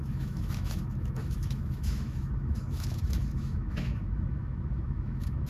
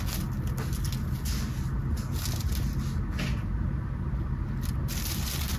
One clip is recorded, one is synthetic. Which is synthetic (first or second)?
first